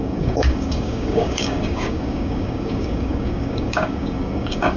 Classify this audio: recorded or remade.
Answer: remade